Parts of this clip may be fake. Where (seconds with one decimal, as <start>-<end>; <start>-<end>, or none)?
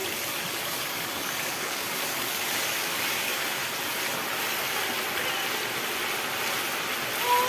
0.5-3.6